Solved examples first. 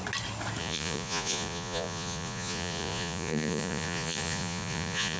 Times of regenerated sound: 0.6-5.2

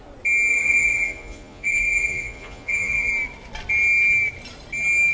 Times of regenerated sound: 0.5-3.1